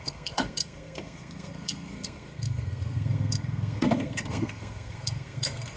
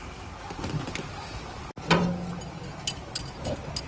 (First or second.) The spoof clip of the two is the first